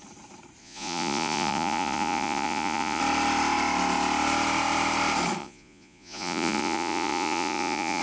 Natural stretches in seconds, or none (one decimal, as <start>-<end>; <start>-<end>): 0.0-0.6; 3.0-5.4